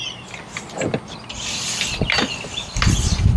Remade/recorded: recorded